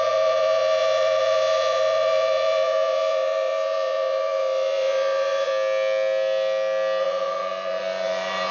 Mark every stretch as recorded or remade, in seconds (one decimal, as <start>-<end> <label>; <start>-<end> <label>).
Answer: 0.0-5.5 remade; 5.5-7.0 recorded; 7.0-8.5 remade